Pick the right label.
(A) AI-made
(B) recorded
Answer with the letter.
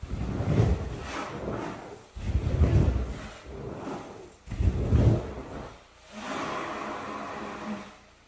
B